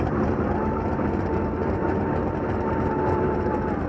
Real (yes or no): no